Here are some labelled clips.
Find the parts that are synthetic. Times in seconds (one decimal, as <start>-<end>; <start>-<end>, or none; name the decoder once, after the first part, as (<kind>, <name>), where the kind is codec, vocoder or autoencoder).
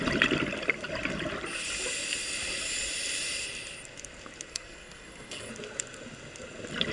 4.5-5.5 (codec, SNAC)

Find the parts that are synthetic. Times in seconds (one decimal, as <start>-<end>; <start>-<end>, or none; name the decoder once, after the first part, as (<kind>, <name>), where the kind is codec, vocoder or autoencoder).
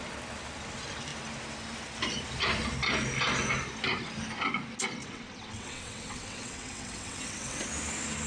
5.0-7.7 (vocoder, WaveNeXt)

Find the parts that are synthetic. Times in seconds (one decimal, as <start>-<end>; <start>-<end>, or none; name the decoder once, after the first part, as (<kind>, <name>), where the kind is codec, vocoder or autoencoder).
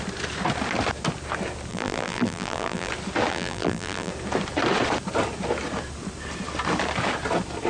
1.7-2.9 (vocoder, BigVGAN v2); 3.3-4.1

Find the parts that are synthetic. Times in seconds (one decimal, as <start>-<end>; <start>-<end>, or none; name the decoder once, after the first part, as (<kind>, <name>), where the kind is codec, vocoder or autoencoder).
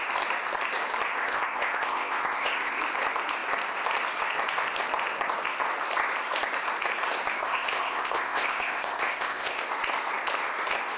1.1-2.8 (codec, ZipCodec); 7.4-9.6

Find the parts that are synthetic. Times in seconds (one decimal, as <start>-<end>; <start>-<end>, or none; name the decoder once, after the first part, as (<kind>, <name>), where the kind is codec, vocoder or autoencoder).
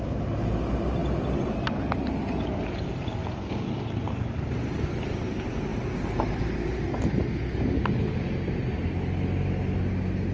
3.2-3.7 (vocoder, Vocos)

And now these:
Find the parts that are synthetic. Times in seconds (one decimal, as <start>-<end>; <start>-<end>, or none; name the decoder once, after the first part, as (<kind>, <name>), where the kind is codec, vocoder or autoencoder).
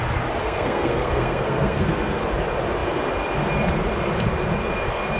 0.4-2.2 (codec, SNAC)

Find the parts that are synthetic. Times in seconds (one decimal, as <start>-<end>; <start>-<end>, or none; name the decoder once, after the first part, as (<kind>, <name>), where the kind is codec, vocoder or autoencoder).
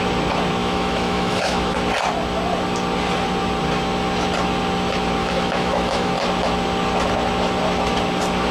0.6-1.8 (autoencoder, DAC-VAE); 5.2-6.1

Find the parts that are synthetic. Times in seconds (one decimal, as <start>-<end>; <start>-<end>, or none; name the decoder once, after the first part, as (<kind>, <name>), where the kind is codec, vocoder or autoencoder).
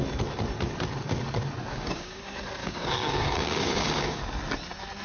1.7-2.2 (codec, DAC); 2.6-4.2